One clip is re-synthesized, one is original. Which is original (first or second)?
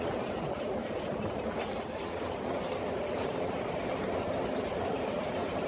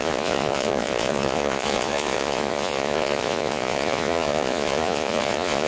first